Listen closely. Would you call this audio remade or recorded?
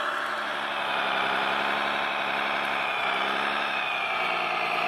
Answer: recorded